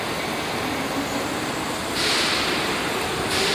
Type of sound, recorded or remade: recorded